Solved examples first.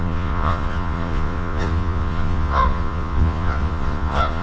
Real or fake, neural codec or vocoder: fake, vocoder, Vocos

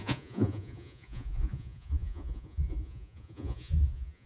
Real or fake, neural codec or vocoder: fake, vocoder, Vocos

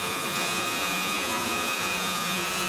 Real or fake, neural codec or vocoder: fake, vocoder, Vocos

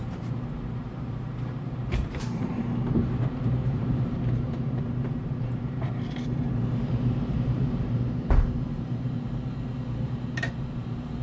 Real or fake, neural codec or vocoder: fake, vocoder, BigVGAN v2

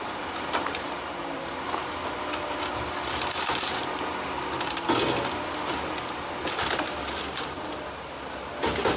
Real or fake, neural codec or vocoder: real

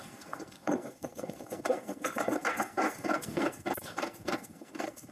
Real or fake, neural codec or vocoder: fake, codec, SNAC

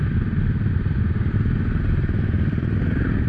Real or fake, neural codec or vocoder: real